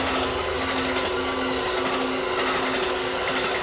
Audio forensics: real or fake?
real